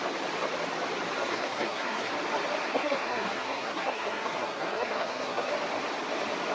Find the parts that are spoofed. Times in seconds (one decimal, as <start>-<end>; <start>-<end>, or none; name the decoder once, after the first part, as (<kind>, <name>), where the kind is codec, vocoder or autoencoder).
1.3-2.1 (codec, SNAC); 2.6-5.5